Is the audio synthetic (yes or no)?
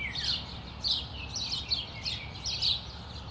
no